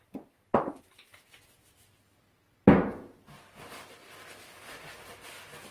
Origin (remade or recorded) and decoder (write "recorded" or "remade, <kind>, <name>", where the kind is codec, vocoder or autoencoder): recorded